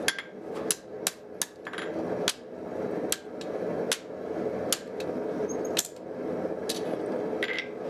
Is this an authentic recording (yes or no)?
yes